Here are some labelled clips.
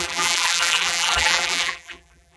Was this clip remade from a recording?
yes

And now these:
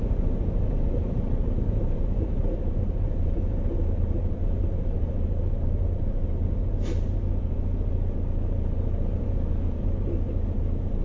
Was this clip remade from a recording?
yes